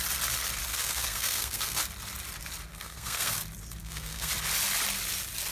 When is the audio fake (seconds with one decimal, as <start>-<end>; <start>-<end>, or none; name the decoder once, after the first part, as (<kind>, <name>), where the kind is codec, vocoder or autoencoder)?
0.7-1.8 (codec, SNAC); 2.7-3.3; 3.8-4.3